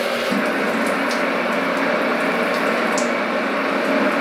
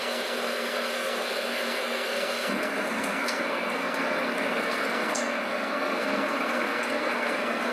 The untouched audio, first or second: first